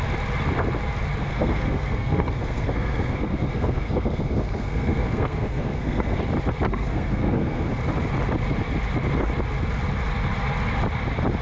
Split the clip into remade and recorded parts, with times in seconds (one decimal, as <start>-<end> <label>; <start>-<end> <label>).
0.0-1.2 recorded; 1.2-6.2 remade; 6.2-6.7 recorded; 6.7-7.7 remade; 7.7-11.4 recorded